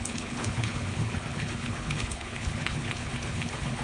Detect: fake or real fake